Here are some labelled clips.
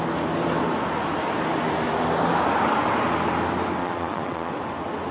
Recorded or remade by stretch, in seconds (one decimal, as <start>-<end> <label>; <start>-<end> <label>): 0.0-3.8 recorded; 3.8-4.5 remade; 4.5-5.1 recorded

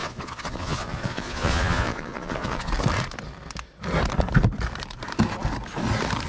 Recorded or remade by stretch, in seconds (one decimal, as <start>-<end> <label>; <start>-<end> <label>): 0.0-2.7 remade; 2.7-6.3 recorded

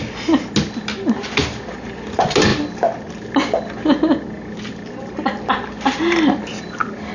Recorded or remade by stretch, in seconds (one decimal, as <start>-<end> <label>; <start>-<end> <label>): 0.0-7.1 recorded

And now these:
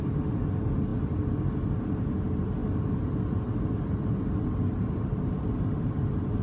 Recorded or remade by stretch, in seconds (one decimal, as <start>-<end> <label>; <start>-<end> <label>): 0.0-6.4 recorded

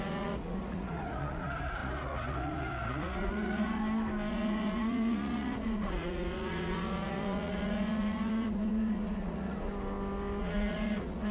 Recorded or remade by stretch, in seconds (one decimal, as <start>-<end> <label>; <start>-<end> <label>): 0.0-3.8 remade; 3.8-4.3 recorded; 4.3-9.7 remade; 9.7-10.4 recorded; 10.4-11.3 remade

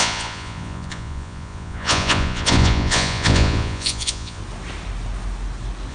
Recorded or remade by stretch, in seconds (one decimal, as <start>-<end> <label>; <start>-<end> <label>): 0.0-4.4 remade; 4.4-5.9 recorded